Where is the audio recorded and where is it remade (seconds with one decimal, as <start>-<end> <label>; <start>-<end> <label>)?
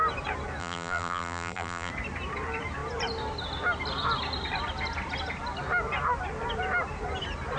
0.0-0.6 recorded; 0.6-1.9 remade; 1.9-7.6 recorded